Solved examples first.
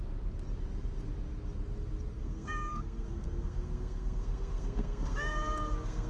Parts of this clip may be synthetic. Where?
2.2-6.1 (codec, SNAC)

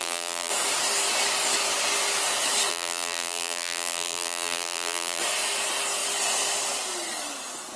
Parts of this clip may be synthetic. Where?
0.0-0.5 (vocoder, BigVGAN v2); 2.7-5.2